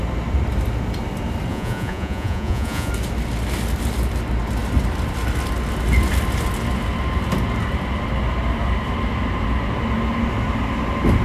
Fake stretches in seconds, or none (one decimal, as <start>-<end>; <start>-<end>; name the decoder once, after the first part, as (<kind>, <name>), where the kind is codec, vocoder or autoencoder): 1.5-2.9 (vocoder, Vocos)